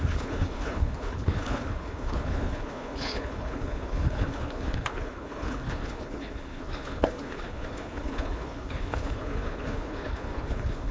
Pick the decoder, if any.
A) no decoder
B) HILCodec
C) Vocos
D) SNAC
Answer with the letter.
B